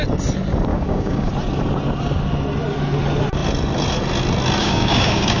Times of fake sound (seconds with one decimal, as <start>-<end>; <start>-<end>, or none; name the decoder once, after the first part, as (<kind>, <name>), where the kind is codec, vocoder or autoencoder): 0.7-1.3 (codec, DAC); 4.6-5.4